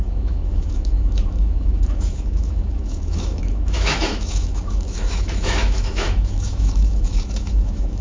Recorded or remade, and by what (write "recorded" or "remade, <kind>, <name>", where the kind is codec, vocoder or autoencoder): remade, autoencoder, DAC-VAE